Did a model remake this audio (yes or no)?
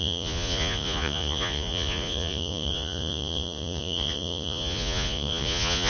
yes